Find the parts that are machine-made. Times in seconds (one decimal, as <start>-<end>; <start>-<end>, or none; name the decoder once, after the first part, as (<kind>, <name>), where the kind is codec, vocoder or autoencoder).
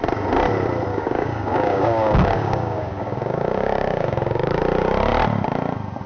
0.9-4.6 (codec, DAC)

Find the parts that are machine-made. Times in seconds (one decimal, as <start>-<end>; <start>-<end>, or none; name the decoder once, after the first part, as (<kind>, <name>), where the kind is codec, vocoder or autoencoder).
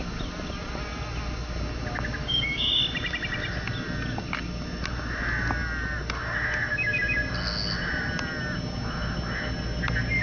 2.2-2.8 (codec, DAC)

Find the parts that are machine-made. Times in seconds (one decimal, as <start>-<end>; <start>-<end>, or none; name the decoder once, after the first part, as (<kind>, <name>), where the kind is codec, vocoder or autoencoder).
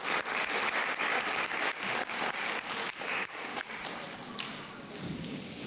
0.8-2.3 (codec, DAC); 2.9-3.7; 4.5-5.7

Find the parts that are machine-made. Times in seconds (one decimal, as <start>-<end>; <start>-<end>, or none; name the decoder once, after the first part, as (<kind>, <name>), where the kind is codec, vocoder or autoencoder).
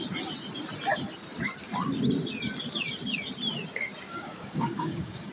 4.1-5.3 (codec, DAC)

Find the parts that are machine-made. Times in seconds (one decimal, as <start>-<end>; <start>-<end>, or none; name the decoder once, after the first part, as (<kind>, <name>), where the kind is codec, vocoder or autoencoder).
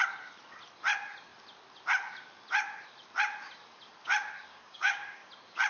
4.5-5.3 (codec, DAC)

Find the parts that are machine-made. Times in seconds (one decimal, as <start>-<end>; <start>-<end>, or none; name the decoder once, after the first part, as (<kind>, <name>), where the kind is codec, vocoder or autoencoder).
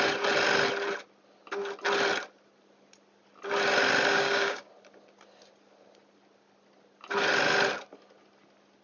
4.1-4.7 (codec, DAC)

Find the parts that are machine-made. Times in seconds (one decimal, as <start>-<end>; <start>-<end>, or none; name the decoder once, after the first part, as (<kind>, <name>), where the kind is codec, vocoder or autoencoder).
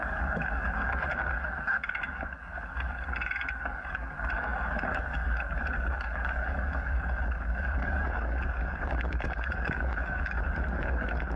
0.0-11.4 (codec, DAC)